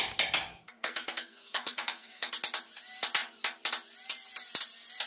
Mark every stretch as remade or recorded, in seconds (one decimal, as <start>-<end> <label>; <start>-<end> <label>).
0.0-0.5 recorded; 0.5-2.3 remade; 2.3-5.1 recorded